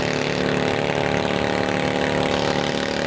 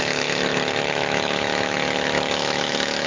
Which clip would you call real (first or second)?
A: first